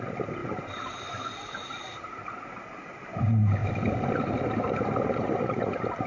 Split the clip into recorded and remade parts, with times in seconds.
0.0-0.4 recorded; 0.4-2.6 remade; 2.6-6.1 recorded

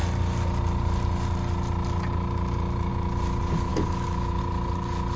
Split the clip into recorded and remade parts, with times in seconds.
0.0-3.7 recorded; 3.7-4.4 remade; 4.4-5.2 recorded

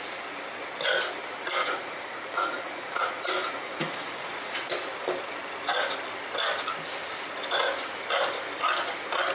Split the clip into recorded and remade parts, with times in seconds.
0.0-1.6 recorded; 1.6-4.7 remade; 4.7-9.3 recorded

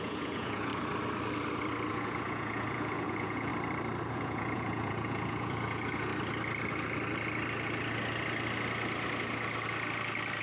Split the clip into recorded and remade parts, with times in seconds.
0.0-0.7 remade; 0.7-1.9 recorded; 1.9-3.5 remade; 3.5-4.1 recorded; 4.1-6.1 remade; 6.1-10.4 recorded

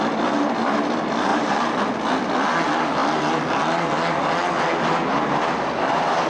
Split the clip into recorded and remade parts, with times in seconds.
0.0-1.3 recorded; 1.3-1.8 remade; 1.8-6.3 recorded